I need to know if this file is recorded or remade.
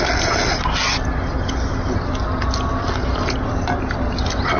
recorded